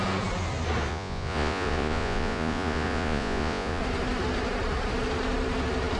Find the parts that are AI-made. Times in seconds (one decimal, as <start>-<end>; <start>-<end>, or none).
0.9-3.8